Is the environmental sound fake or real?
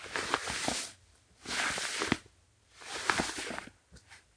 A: real